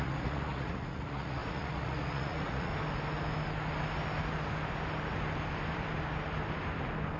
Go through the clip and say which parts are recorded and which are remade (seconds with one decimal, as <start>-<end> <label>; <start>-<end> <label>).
0.0-2.7 remade; 2.7-7.2 recorded